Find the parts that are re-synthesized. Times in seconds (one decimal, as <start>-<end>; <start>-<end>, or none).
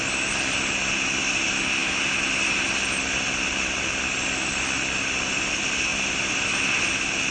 none